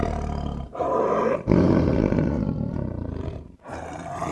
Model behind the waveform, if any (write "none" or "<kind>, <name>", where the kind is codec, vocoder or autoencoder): vocoder, BigVGAN v2